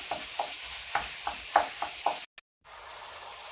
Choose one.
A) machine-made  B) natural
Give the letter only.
B